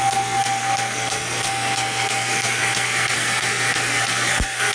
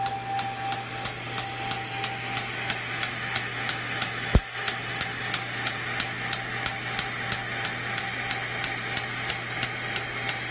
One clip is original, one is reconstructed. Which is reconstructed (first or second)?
first